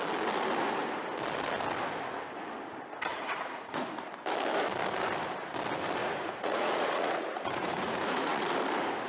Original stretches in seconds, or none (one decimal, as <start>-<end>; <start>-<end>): 0.0-3.1; 4.1-6.0; 8.4-9.1